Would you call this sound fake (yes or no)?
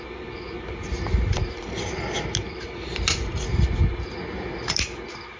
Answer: no